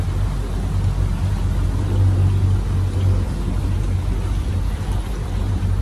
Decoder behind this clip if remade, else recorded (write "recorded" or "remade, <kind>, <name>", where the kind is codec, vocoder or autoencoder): recorded